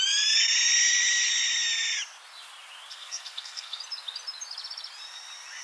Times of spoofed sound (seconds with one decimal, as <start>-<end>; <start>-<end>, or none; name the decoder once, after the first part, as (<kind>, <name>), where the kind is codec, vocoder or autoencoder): 2.9-3.8 (codec, SNAC)